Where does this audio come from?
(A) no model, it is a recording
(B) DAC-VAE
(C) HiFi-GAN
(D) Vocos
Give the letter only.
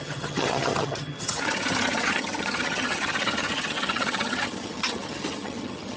C